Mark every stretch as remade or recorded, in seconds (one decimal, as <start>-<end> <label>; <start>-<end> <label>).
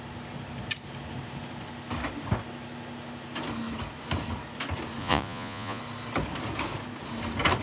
0.0-5.0 recorded; 5.0-5.8 remade; 5.8-7.6 recorded